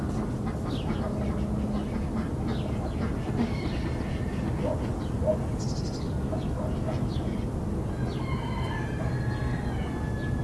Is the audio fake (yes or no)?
no